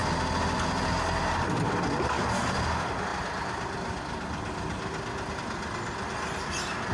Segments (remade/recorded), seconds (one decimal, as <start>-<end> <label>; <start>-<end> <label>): 0.0-6.9 recorded